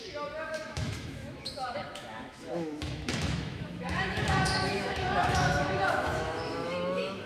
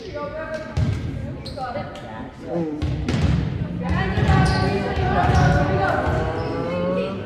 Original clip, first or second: second